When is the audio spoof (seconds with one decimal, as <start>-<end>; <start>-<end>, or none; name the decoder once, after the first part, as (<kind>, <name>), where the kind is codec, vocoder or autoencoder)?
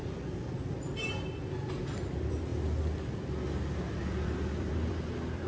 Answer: 1.8-2.5 (vocoder, BigVGAN v2); 4.0-5.5